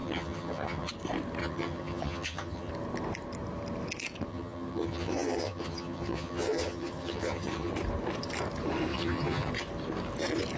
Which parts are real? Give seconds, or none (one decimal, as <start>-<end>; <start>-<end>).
0.9-1.4; 2.7-4.3; 7.7-8.9; 9.5-10.6